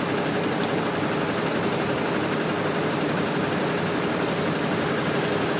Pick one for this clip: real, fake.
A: fake